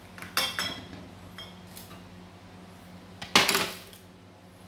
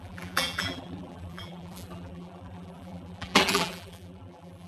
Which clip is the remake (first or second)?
second